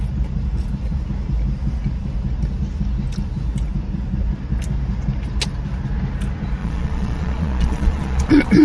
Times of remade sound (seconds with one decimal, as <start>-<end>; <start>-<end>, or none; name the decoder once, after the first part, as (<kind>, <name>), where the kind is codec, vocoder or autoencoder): 6.6-8.6 (vocoder, Vocos)